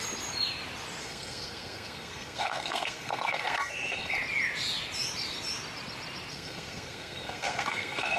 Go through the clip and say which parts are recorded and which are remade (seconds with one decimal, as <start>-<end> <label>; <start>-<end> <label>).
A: 0.0-1.0 recorded; 1.0-4.1 remade; 4.1-6.3 recorded; 6.3-8.2 remade